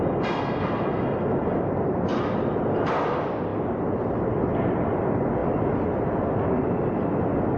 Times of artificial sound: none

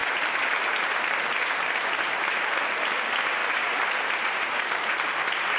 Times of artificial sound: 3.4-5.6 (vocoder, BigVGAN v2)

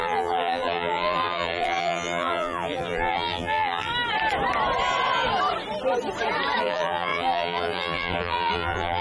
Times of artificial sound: 0.0-3.9 (vocoder, BigVGAN v2); 6.6-9.0